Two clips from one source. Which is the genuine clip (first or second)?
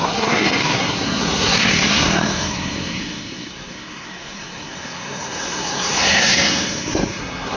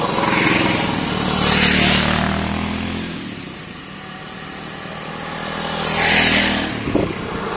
second